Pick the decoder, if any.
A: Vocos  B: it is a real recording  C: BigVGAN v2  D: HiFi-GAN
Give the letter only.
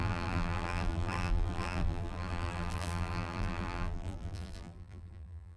C